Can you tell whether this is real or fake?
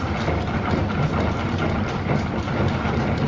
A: real